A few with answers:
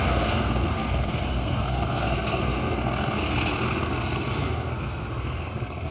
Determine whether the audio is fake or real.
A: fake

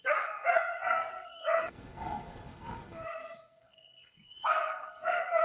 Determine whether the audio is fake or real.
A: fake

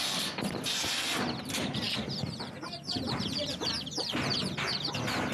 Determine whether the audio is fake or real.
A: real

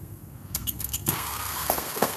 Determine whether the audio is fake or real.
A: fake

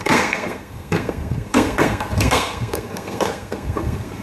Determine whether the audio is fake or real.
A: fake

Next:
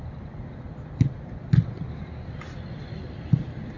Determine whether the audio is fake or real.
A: real